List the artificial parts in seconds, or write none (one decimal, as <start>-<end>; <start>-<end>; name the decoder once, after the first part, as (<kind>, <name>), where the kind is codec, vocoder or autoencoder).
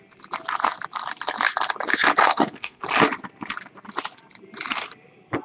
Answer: 2.2-2.8 (codec, SNAC)